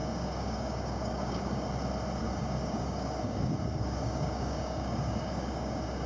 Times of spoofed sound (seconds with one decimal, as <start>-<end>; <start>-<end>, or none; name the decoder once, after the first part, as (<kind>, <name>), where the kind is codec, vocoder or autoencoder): 0.0-1.7 (codec, DAC); 2.2-6.1